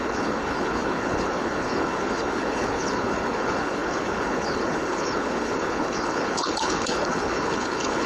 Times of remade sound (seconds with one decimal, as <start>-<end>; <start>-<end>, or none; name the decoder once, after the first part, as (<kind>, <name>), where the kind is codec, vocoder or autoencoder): 0.0-8.1 (codec, HILCodec)